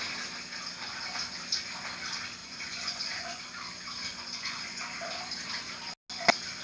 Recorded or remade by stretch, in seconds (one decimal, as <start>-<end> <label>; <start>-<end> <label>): 0.0-2.4 recorded; 2.4-3.4 remade; 3.4-4.1 recorded; 4.1-4.8 remade; 4.8-6.6 recorded